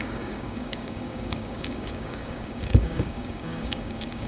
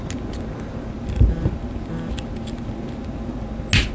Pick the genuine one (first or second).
second